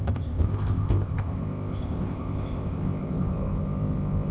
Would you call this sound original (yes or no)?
no